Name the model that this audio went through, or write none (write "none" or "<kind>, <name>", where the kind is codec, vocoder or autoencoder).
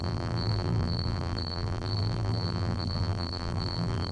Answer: vocoder, BigVGAN v2